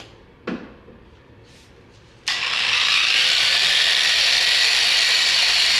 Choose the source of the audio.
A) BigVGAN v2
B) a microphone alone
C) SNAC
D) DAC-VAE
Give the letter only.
A